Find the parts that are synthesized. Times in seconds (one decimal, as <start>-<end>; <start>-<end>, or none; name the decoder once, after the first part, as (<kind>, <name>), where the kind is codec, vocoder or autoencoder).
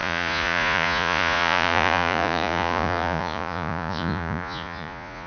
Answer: 0.0-5.3 (vocoder, Vocos)